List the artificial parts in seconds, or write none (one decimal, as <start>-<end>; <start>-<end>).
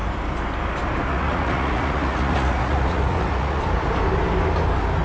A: 1.1-3.6